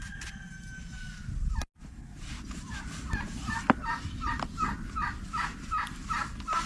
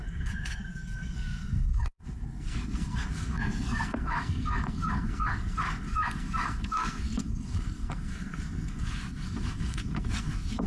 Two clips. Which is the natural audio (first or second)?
first